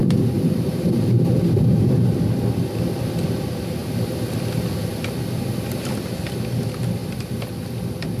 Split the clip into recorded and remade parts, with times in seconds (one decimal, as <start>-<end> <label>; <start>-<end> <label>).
0.0-2.1 remade; 2.1-8.2 recorded